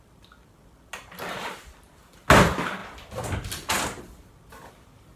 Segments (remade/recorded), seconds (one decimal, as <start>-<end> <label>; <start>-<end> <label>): 0.0-5.2 recorded